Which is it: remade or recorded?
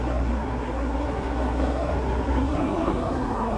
remade